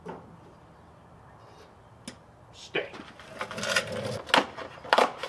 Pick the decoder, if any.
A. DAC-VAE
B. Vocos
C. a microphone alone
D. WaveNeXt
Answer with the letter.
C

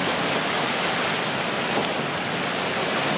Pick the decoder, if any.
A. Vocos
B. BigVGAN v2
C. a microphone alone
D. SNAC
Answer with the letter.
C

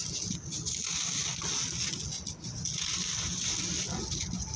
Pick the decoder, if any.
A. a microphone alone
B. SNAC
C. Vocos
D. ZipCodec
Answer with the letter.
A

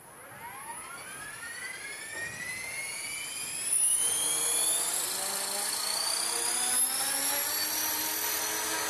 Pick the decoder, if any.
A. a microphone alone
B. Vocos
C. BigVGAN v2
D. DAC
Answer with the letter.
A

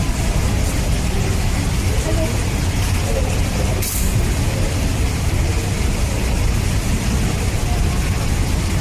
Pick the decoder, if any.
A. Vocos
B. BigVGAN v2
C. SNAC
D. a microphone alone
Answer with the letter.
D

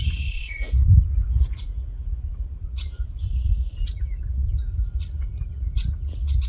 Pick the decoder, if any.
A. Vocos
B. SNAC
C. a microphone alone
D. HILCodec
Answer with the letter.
A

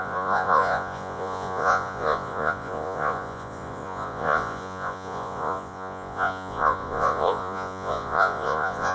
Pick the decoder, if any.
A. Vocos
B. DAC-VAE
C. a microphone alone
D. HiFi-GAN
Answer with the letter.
A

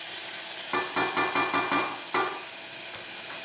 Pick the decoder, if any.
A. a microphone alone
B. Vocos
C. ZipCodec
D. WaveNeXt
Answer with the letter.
A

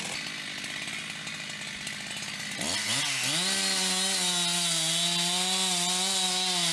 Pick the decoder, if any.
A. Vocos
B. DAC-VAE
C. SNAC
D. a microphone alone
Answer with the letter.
D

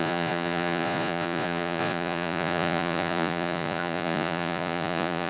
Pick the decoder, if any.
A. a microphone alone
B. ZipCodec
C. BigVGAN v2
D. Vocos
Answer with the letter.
D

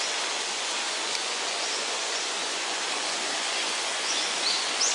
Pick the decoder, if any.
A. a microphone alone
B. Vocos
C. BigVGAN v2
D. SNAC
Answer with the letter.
B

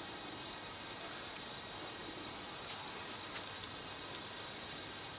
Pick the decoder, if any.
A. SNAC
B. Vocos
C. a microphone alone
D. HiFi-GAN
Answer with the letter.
C